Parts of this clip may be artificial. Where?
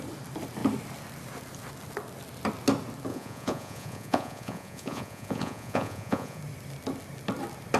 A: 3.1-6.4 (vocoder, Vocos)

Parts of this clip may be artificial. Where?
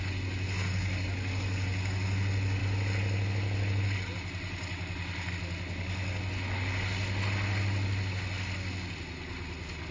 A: none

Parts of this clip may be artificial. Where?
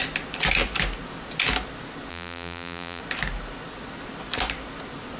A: 2.1-3.0 (vocoder, BigVGAN v2)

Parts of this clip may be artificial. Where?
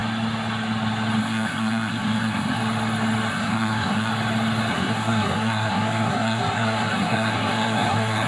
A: 1.2-2.6 (codec, SNAC); 3.3-4.1; 4.7-8.3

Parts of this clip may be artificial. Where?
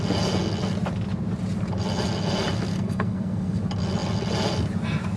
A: 2.7-3.6 (codec, SNAC)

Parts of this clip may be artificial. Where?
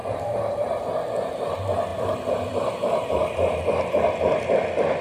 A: 0.0-0.8 (vocoder, BigVGAN v2); 1.9-5.0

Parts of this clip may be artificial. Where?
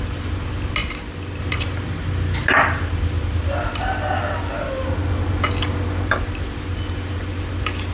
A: none